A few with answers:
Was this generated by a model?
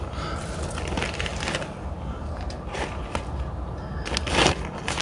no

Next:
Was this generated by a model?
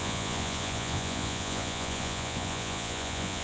yes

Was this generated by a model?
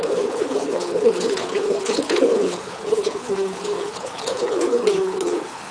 yes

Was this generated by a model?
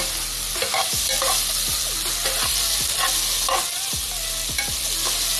no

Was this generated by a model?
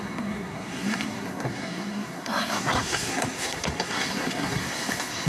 yes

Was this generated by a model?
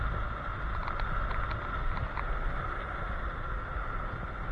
no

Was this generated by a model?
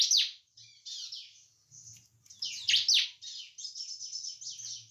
no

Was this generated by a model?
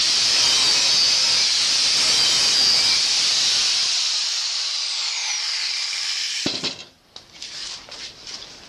yes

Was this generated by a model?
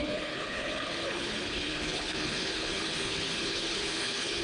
yes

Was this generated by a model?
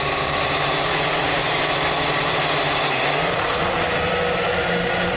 yes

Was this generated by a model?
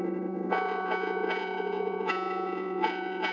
yes